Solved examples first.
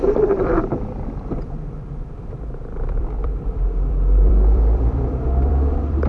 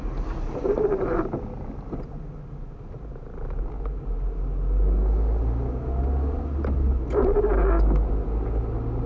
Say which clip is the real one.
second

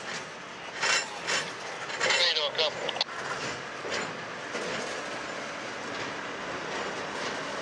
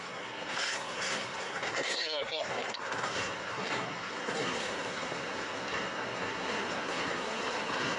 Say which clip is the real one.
first